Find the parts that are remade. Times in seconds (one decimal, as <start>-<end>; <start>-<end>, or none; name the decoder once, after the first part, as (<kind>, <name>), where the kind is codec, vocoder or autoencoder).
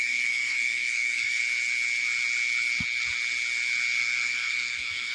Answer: 0.0-1.4 (codec, SNAC); 4.0-5.1